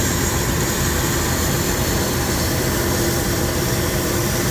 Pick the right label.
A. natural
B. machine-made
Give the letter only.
B